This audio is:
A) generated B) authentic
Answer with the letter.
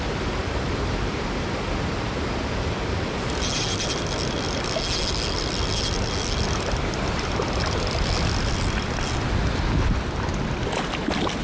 B